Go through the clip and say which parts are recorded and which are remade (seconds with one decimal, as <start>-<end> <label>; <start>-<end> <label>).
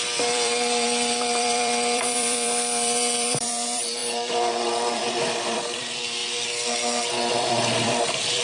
0.0-6.2 remade; 6.2-7.3 recorded; 7.3-8.4 remade